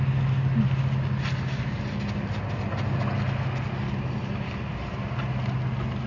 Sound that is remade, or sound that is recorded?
recorded